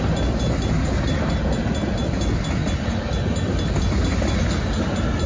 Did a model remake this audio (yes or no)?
no